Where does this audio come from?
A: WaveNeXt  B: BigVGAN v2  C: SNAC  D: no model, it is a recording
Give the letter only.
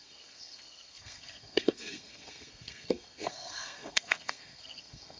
C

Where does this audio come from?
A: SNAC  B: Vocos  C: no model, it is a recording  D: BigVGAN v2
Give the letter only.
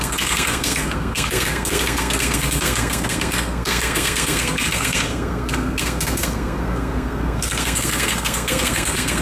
A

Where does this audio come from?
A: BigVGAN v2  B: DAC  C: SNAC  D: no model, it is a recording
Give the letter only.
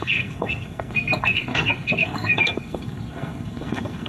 C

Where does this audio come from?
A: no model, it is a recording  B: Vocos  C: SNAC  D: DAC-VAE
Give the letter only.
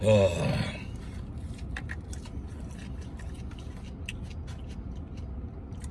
A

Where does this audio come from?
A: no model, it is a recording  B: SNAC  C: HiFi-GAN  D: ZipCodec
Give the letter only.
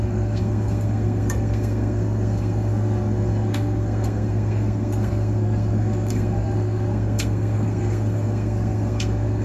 B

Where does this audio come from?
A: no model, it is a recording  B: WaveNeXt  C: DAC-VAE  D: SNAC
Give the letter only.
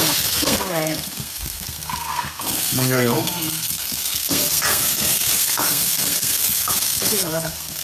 D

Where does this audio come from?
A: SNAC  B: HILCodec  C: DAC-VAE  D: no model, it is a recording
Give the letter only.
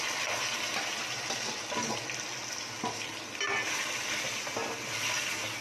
D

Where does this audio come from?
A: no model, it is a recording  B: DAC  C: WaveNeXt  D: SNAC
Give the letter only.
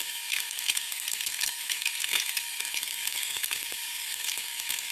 D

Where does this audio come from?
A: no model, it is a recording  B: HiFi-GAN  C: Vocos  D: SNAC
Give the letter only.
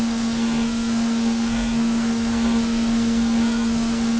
D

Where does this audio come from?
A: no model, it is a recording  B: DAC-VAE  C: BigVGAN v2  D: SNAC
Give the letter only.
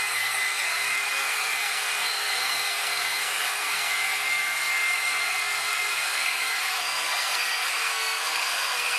D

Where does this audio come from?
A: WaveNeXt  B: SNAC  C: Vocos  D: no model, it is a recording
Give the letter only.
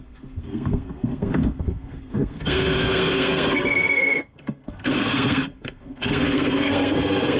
B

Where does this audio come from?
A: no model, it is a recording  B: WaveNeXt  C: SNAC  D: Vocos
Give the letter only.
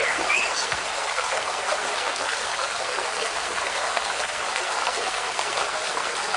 C